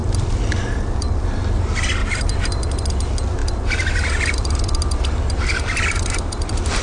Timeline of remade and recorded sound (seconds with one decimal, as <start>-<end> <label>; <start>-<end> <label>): 0.0-1.1 remade; 1.1-3.4 recorded; 3.4-6.8 remade